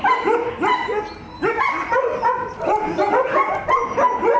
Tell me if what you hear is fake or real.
real